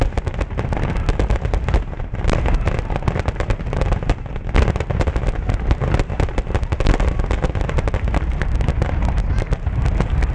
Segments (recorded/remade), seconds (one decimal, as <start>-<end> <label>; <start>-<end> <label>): 0.0-10.3 recorded